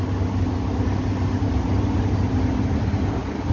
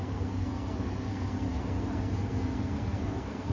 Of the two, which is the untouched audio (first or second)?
first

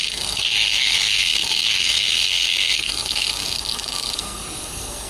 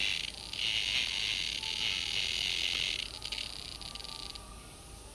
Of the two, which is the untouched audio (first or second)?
second